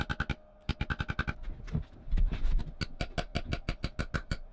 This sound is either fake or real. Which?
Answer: real